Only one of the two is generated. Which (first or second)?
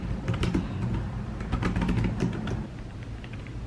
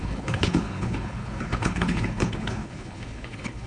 second